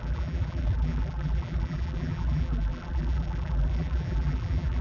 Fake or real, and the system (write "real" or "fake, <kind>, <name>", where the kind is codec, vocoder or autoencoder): fake, vocoder, BigVGAN v2